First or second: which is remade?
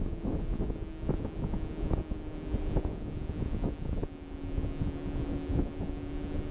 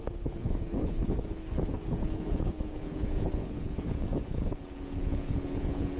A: second